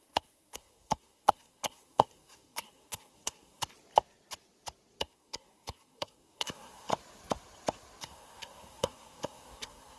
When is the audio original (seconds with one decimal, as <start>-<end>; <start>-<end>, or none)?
3.6-5.0; 6.9-8.0